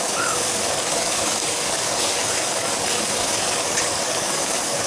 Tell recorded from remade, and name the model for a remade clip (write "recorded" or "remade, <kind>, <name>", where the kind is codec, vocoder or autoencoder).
remade, codec, DAC